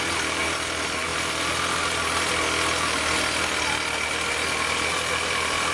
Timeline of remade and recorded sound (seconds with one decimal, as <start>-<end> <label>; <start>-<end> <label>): 0.0-5.7 recorded